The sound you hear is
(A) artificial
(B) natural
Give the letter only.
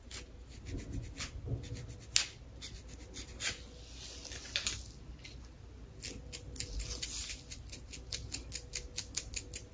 B